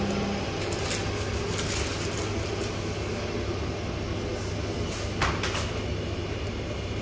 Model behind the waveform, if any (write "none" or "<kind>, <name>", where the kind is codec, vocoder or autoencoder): none